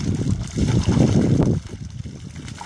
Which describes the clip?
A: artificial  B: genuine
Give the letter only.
B